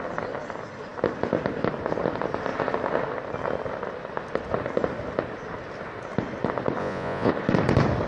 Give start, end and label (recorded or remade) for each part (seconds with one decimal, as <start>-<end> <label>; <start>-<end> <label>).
0.0-6.8 recorded; 6.8-7.3 remade; 7.3-8.1 recorded